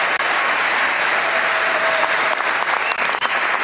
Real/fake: real